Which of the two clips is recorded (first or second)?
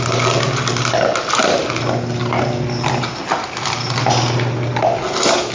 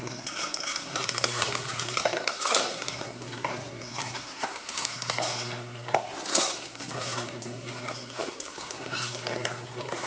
first